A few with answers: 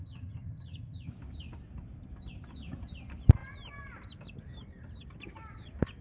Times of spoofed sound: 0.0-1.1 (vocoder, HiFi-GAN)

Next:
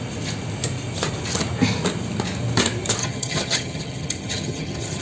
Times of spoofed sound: 3.0-5.0 (vocoder, HiFi-GAN)

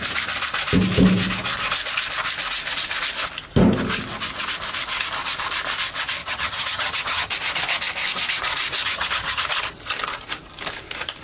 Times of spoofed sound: 6.2-7.3 (vocoder, HiFi-GAN); 8.8-9.4

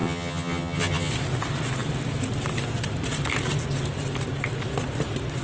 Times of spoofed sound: 0.0-1.1 (vocoder, HiFi-GAN)

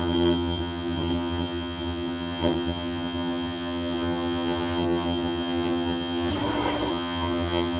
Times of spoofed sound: 0.0-6.3 (vocoder, HiFi-GAN); 6.9-7.8

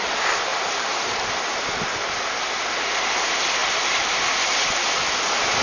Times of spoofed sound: none